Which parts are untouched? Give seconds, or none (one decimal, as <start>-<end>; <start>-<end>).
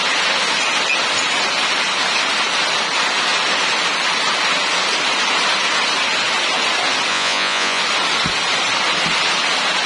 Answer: 0.0-7.1; 7.8-9.9